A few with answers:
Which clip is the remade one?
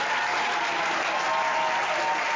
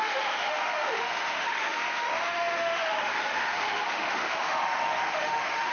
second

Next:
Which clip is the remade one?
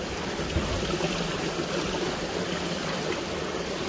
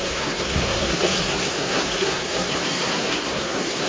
second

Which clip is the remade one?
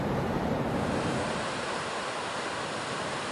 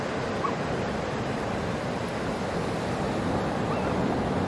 first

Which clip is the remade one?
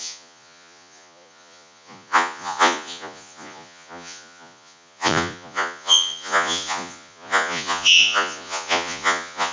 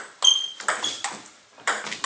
first